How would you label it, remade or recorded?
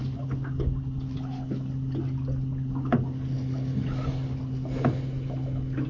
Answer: recorded